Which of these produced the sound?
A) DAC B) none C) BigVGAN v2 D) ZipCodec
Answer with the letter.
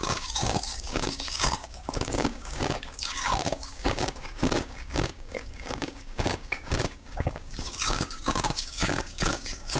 A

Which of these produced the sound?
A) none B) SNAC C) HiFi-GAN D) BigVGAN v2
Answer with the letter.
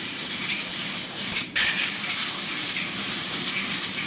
D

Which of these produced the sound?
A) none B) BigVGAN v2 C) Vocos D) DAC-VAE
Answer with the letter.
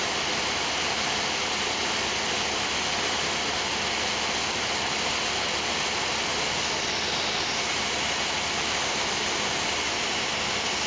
A